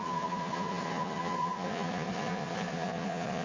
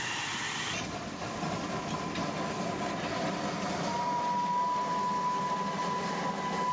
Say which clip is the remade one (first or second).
first